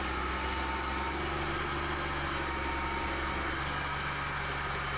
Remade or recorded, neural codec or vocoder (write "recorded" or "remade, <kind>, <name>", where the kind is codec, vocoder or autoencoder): recorded